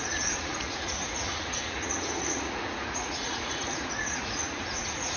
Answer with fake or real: fake